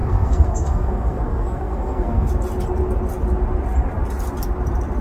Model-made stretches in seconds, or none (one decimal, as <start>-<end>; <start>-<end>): 0.0-2.3